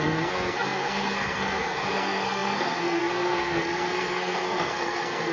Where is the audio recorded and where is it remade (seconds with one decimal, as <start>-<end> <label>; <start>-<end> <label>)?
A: 0.0-5.3 remade